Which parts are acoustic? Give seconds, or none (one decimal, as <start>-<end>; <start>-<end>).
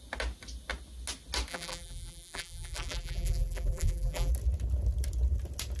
0.0-1.5; 4.3-5.8